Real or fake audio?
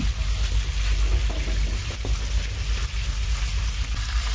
real